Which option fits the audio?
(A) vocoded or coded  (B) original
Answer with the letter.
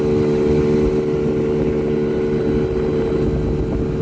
B